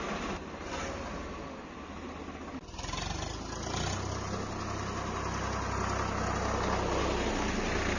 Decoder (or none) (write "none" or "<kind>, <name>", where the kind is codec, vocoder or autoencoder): none